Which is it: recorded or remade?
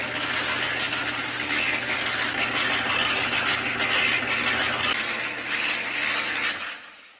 recorded